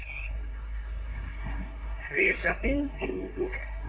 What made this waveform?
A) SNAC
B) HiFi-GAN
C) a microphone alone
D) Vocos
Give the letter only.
A